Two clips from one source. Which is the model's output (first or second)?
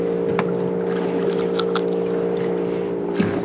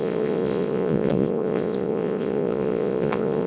second